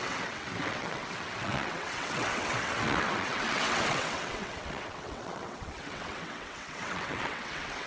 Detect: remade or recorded remade